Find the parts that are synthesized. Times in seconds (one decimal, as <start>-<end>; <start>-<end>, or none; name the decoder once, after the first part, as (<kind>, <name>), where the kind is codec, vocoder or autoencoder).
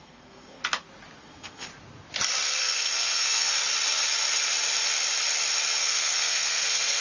0.0-0.6 (codec, SNAC); 1.2-1.7; 2.6-3.5; 5.8-7.0